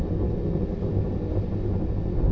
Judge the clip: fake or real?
real